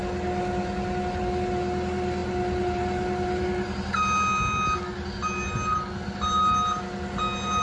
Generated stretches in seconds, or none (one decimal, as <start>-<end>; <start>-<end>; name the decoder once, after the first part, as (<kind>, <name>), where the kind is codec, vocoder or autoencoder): none